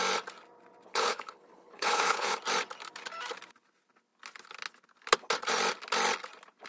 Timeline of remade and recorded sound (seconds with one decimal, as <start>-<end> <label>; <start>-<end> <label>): 0.0-0.9 recorded; 0.9-2.4 remade; 2.4-6.7 recorded